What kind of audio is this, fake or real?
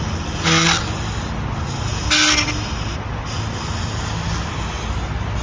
real